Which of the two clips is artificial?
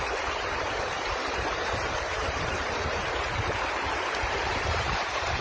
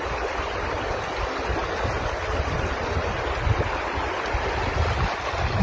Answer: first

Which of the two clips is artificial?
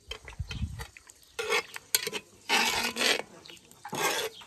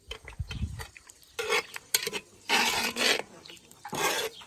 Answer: second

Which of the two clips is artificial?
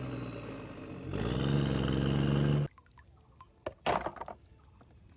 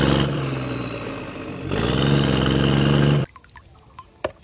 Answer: second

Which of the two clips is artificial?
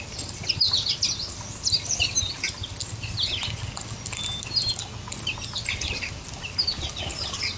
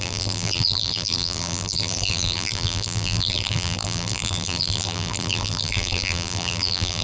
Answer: second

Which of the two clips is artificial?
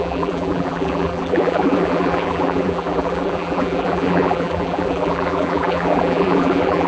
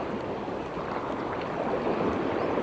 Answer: first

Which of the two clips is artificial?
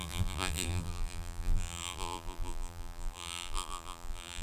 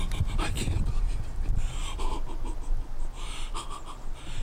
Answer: first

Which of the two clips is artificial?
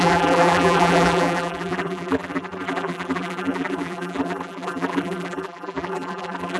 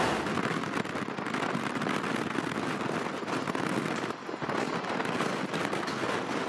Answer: first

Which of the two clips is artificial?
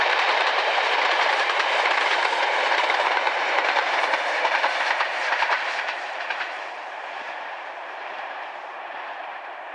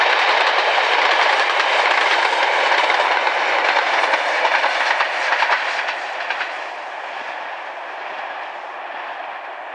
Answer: first